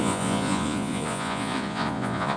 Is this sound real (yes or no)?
no